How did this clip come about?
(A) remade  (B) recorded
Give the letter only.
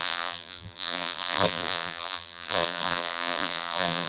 A